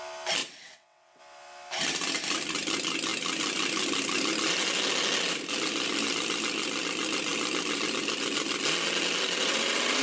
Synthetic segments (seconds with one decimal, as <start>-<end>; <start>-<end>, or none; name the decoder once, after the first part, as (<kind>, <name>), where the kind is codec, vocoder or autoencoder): 0.4-1.2 (vocoder, WaveNeXt)